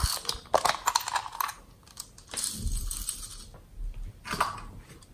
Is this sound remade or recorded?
recorded